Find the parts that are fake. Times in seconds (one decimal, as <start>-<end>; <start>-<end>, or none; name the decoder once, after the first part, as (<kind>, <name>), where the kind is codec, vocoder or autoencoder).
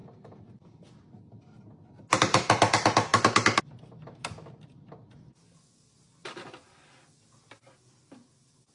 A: none